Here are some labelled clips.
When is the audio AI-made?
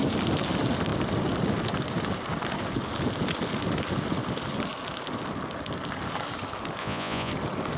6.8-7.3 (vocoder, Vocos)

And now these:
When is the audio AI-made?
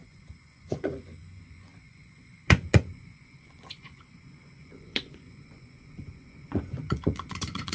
0.0-7.7 (vocoder, Vocos)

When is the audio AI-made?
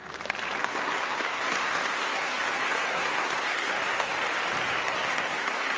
0.6-4.1 (codec, SNAC); 4.7-5.8